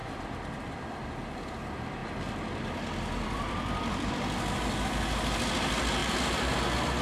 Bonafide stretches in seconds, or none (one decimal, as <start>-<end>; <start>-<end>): 1.5-2.0; 4.1-6.0; 6.6-7.0